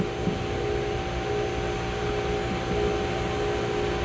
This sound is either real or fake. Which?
real